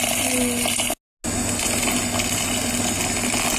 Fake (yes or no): no